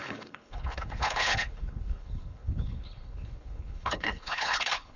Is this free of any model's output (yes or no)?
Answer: no